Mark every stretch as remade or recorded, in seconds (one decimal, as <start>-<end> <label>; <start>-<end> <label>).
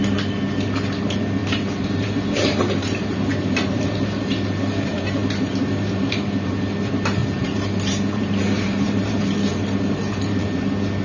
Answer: 0.0-1.4 recorded; 1.4-6.5 remade; 6.5-7.2 recorded; 7.2-10.6 remade; 10.6-11.0 recorded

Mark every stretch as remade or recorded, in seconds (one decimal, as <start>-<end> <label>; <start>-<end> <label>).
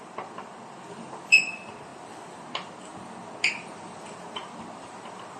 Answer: 0.0-2.9 remade; 2.9-3.5 recorded; 3.5-5.4 remade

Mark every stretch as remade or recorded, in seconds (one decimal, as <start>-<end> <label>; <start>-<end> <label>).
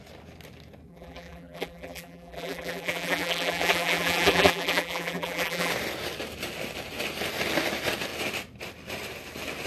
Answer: 0.0-0.9 recorded; 0.9-5.7 remade; 5.7-9.7 recorded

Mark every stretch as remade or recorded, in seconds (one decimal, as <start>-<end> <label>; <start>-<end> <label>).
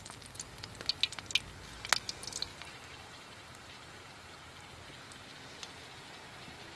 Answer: 0.0-2.5 recorded; 2.5-4.3 remade; 4.3-6.8 recorded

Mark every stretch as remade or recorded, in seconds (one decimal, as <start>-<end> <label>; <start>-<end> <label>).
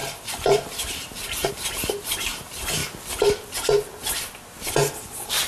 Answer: 0.0-2.8 remade; 2.8-5.0 recorded; 5.0-5.5 remade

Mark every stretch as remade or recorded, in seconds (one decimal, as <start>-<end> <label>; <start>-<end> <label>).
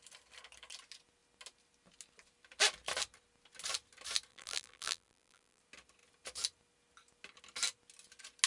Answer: 0.0-4.3 recorded; 4.3-5.6 remade; 5.6-8.5 recorded